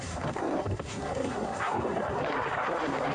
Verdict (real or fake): fake